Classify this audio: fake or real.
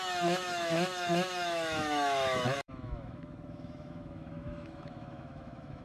fake